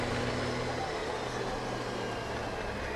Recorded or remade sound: recorded